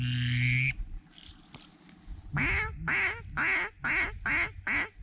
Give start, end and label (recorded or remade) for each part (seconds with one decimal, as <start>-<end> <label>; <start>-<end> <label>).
0.0-5.0 recorded